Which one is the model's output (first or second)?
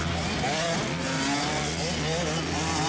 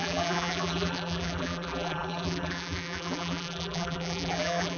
second